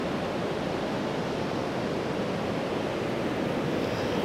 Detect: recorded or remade recorded